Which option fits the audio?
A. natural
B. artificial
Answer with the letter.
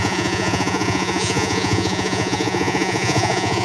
B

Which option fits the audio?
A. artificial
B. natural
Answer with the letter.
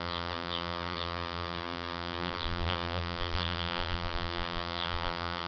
A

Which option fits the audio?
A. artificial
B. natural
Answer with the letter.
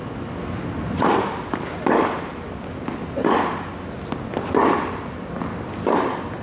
B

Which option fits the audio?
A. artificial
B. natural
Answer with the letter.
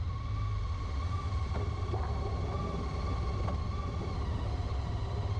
B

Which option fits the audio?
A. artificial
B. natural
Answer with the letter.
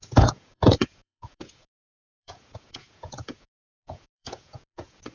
A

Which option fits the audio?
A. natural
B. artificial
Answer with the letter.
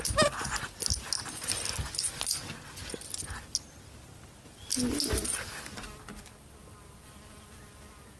A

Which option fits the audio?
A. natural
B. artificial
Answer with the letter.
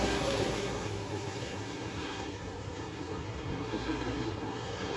B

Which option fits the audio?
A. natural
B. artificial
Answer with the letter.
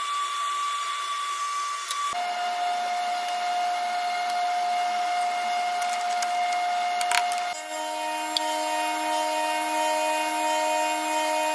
A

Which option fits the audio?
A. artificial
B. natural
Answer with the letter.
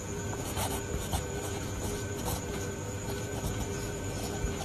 A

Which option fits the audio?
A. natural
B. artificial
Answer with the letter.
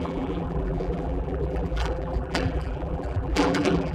B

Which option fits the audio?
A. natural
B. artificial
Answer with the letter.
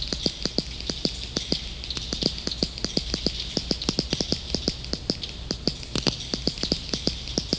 A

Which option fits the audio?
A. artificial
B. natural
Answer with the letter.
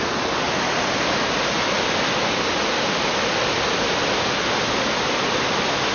B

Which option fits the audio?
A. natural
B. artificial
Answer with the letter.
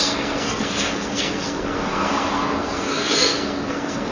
B